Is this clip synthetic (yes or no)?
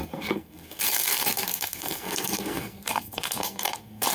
yes